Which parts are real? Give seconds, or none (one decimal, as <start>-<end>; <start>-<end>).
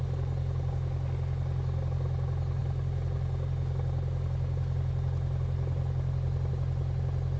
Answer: 0.0-7.4